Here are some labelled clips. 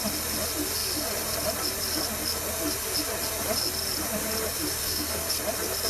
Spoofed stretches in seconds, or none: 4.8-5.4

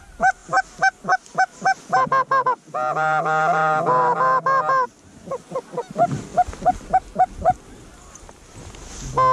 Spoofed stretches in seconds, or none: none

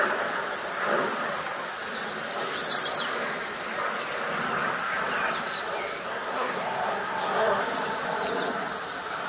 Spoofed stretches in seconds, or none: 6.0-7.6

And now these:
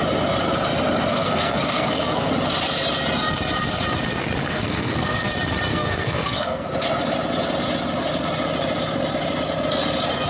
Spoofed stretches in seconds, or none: 1.1-2.3; 4.4-5.3; 5.7-6.7

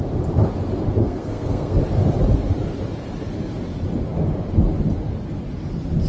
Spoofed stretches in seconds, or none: 1.0-1.8

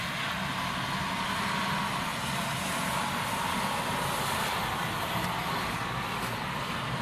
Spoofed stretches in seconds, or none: none

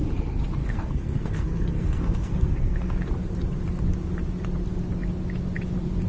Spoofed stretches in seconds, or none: 0.6-3.1

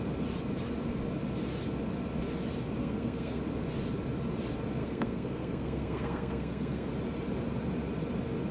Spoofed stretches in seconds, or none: 2.8-3.4; 4.8-6.9